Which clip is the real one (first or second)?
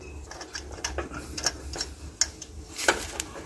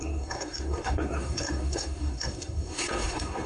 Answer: first